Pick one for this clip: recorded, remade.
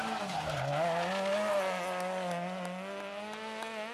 recorded